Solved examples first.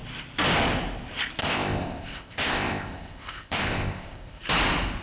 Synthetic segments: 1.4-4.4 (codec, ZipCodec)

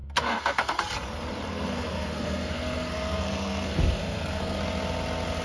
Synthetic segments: 0.0-0.8 (codec, SNAC); 1.5-4.6

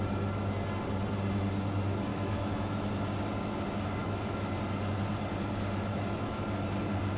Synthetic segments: 2.1-2.9 (autoencoder, DAC-VAE); 4.0-4.5; 5.9-6.4

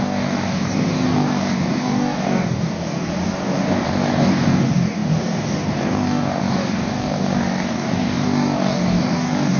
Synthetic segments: 0.0-9.6 (codec, DAC)